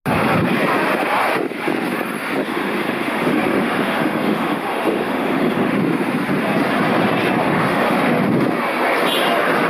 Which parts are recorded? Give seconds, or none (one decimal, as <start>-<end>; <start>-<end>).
0.0-2.4; 5.8-7.4; 8.1-9.7